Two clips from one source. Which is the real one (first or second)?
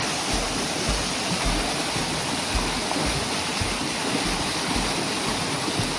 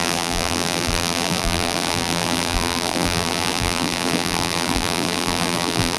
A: first